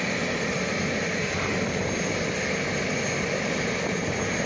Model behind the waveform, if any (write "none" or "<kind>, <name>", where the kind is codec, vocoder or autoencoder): none